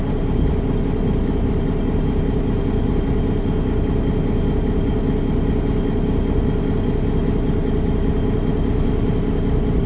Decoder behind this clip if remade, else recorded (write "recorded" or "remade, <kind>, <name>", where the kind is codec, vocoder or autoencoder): recorded